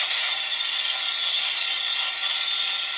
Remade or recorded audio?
recorded